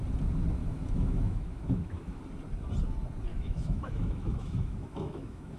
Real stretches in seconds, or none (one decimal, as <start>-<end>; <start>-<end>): 0.0-0.6; 2.2-3.3